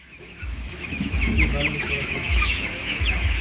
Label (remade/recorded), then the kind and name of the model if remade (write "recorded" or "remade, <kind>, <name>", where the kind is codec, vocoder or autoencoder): remade, autoencoder, DAC-VAE